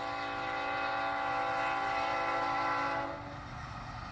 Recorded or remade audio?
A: recorded